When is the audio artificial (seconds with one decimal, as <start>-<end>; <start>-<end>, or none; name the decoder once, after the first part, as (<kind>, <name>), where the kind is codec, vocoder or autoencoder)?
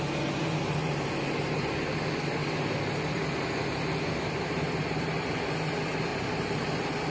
none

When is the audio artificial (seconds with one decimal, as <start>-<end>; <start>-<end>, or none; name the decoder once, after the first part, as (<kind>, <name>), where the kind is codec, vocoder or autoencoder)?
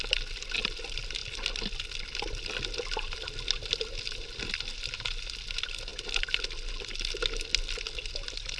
none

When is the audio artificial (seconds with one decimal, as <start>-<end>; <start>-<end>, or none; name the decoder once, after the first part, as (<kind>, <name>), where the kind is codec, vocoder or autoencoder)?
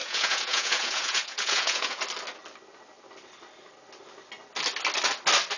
0.0-2.0 (vocoder, Vocos)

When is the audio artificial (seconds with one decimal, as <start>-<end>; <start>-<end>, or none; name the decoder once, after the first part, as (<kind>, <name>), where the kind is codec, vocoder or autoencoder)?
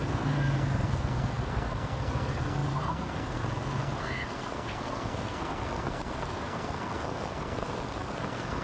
0.0-8.6 (codec, SNAC)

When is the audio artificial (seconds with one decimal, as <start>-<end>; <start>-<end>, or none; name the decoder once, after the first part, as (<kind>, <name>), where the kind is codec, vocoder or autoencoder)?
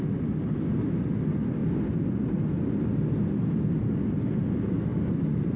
none